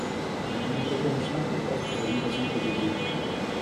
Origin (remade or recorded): recorded